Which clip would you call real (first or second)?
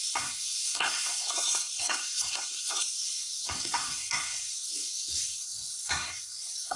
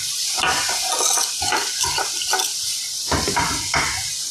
second